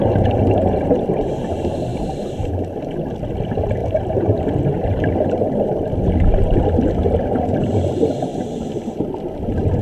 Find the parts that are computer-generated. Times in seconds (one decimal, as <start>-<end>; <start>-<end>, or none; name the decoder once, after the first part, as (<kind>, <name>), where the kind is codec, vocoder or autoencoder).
1.9-2.5 (vocoder, BigVGAN v2); 8.3-8.9